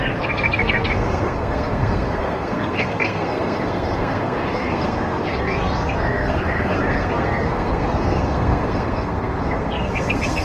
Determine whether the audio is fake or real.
fake